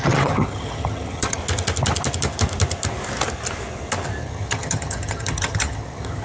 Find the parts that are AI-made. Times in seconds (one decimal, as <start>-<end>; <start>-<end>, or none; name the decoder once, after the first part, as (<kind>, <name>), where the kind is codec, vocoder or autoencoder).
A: 0.0-1.4 (vocoder, HiFi-GAN); 4.2-6.2

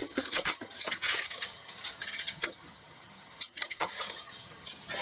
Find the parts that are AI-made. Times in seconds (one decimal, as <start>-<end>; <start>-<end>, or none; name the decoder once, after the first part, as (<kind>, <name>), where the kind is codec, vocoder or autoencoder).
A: 0.0-5.0 (vocoder, HiFi-GAN)